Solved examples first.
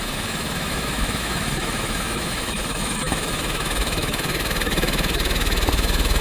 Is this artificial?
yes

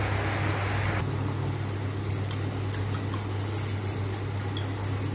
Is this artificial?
no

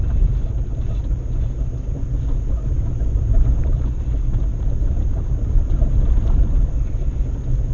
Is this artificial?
no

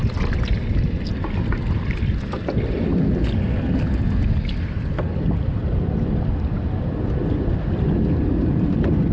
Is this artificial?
no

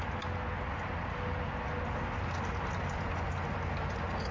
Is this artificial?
no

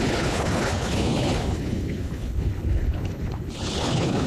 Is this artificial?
yes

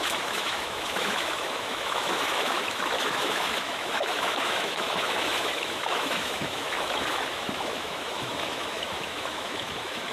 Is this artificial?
yes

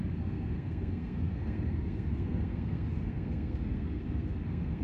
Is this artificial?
yes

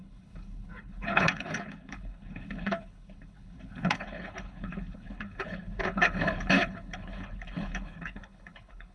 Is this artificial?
yes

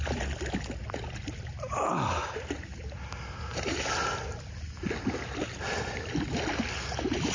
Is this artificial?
no